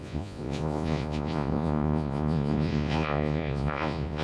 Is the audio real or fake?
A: fake